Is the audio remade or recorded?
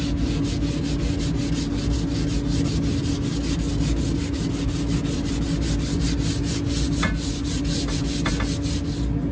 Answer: recorded